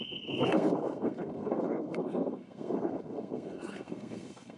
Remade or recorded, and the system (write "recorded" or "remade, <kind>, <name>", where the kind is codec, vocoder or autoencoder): remade, codec, SNAC